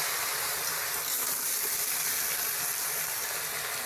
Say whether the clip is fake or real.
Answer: real